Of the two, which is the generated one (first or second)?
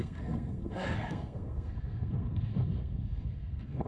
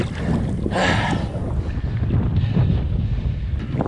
first